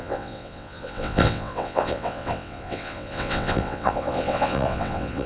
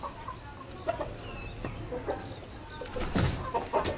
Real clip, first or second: second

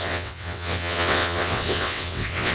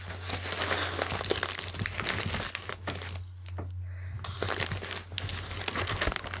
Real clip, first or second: second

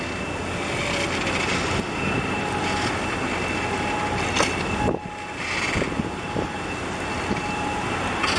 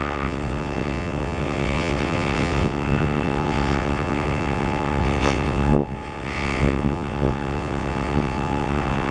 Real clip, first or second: first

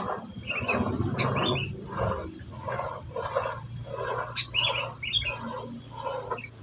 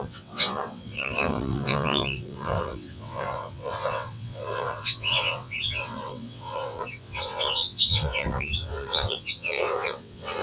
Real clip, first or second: first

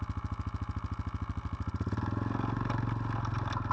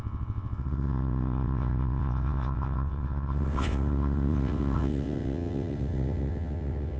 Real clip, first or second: first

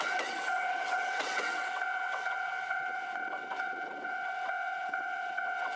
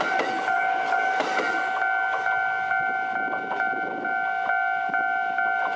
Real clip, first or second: second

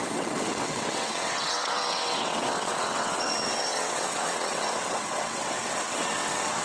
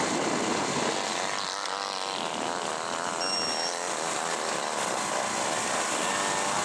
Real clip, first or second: second